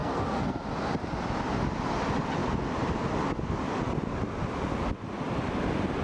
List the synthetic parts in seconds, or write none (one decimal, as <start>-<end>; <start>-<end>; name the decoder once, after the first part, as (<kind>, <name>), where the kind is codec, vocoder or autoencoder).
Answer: 0.0-0.6 (codec, SNAC)